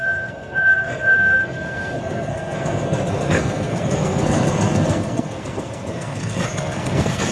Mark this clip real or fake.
fake